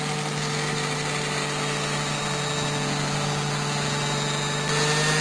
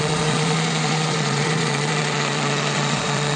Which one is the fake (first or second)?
second